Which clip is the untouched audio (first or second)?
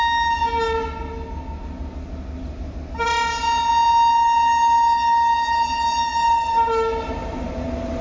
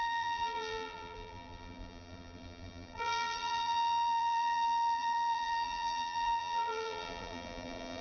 first